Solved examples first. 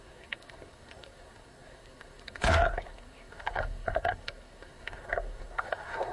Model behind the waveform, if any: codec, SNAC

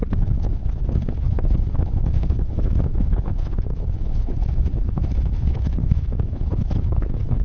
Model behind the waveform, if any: codec, HILCodec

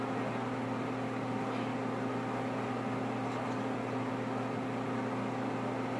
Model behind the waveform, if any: none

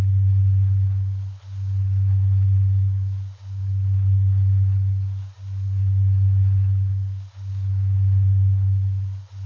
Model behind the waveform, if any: codec, HILCodec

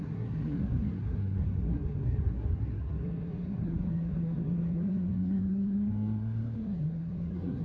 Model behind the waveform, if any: codec, SNAC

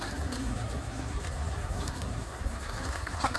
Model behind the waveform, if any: codec, SNAC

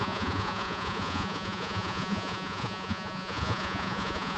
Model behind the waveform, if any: vocoder, Vocos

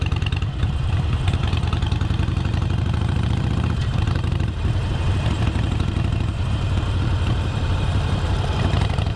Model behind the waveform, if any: vocoder, BigVGAN v2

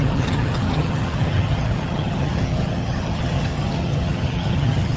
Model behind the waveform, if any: vocoder, HiFi-GAN